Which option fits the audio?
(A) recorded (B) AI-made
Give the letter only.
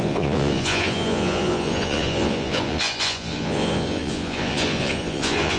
B